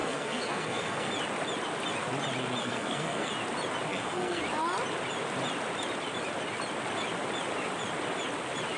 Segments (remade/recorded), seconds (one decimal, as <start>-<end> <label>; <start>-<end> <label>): 0.0-1.1 remade; 1.1-2.6 recorded; 2.6-3.3 remade; 3.3-3.9 recorded; 3.9-4.4 remade; 4.4-8.8 recorded